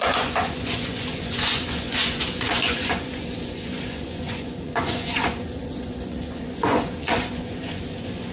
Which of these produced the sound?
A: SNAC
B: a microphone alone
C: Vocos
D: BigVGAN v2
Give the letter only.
C